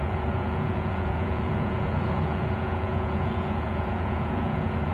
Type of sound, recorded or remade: remade